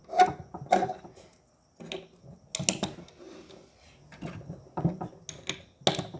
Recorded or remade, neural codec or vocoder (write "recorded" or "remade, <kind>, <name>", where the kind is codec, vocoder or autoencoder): recorded